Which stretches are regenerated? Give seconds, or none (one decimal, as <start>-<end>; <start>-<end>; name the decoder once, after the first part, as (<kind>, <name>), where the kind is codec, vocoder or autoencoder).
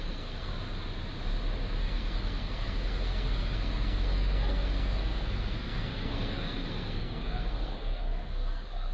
0.0-0.5 (codec, SNAC); 1.8-8.9